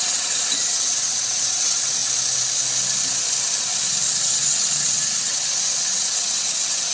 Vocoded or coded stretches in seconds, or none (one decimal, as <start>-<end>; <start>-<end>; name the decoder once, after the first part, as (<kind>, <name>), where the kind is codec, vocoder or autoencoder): 0.0-2.0 (vocoder, WaveNeXt); 4.1-6.9